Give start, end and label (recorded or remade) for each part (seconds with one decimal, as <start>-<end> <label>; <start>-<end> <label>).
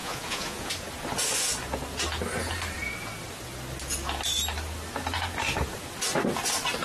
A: 0.0-0.7 remade; 0.7-6.8 recorded